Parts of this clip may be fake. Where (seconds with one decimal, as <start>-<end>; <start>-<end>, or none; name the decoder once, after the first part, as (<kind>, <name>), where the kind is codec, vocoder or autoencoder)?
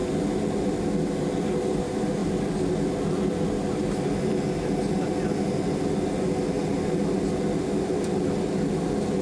none